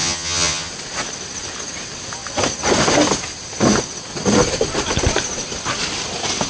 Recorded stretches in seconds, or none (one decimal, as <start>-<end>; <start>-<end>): 0.7-6.5